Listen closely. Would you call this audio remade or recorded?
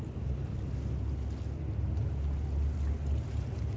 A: recorded